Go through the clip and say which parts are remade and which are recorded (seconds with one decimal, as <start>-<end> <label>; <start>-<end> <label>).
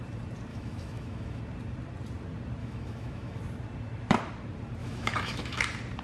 0.0-0.5 recorded; 0.5-1.4 remade; 1.4-2.6 recorded; 2.6-3.4 remade; 3.4-4.8 recorded; 4.8-5.6 remade; 5.6-6.0 recorded